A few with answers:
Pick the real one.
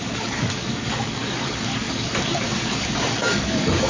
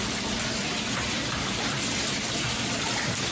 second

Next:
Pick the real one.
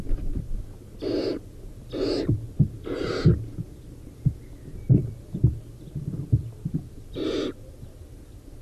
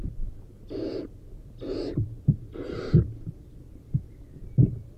first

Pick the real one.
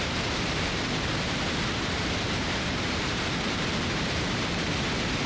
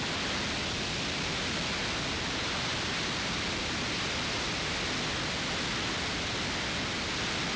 second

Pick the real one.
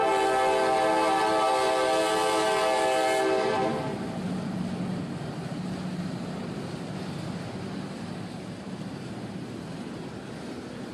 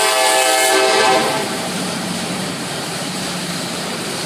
first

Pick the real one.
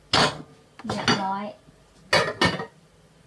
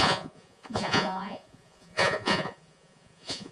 first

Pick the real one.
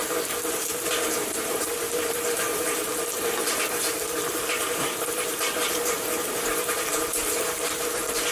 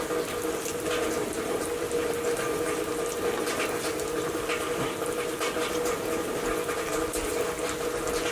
second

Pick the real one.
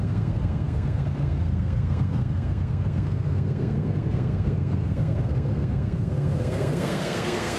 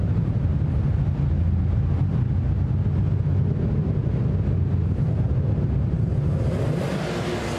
second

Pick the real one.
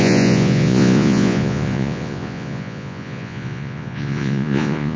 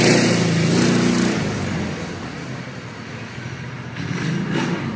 second